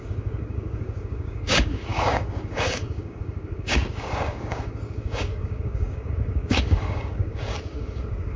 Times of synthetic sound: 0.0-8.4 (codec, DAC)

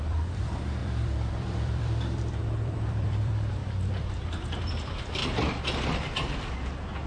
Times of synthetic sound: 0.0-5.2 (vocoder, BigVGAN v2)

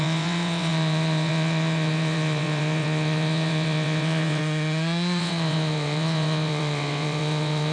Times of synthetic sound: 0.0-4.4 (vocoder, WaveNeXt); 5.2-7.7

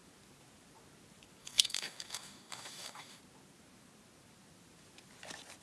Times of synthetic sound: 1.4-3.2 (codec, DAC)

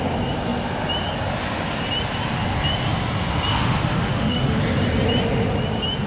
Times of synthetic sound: 3.5-4.6 (autoencoder, DAC-VAE)

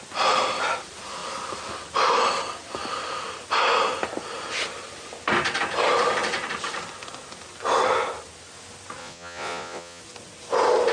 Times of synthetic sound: 9.0-10.0 (vocoder, Vocos)

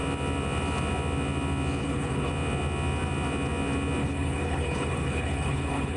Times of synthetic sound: 1.8-2.3 (codec, HILCodec); 4.0-6.0

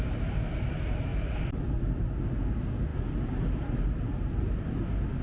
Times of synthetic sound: none